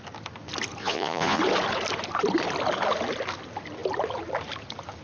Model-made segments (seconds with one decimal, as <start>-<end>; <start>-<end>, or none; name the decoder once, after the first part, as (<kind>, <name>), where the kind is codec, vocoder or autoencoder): 0.8-1.4 (vocoder, Vocos)